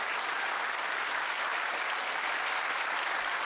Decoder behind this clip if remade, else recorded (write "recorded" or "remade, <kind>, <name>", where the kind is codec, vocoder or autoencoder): recorded